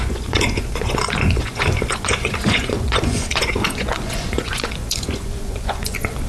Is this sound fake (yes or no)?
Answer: yes